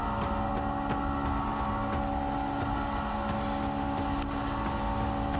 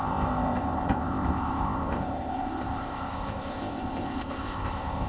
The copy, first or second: second